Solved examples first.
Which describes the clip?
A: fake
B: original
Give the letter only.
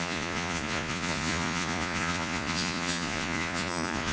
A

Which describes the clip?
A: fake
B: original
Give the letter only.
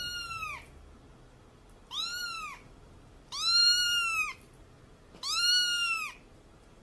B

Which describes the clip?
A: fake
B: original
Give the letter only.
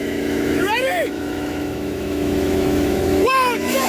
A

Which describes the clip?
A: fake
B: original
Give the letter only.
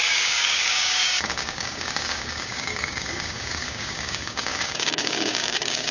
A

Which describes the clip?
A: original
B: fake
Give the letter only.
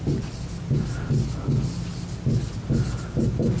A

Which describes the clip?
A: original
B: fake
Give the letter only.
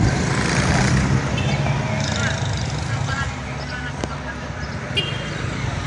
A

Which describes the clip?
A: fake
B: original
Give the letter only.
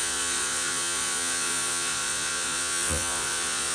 A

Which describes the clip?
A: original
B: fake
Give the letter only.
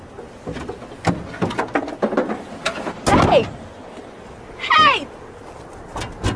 A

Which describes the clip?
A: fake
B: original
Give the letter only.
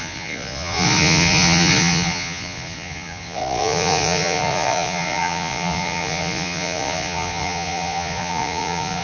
A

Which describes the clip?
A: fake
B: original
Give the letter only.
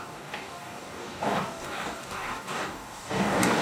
A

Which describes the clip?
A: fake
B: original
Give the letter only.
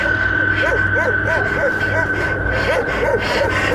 B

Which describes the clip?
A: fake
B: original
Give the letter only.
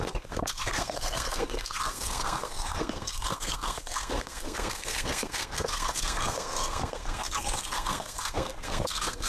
A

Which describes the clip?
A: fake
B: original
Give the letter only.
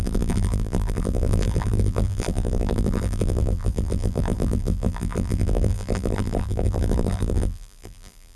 A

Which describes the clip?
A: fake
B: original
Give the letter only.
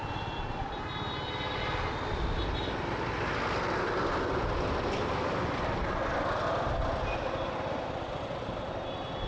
B